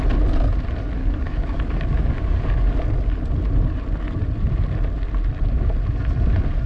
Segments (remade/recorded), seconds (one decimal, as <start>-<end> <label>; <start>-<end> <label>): 0.0-1.0 recorded; 1.0-2.8 remade; 2.8-6.7 recorded